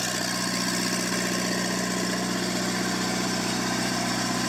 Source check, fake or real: real